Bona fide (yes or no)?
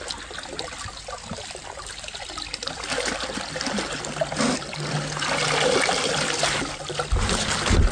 yes